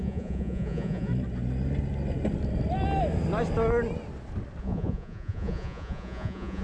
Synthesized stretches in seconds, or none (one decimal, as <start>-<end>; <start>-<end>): 0.0-1.1; 4.6-6.6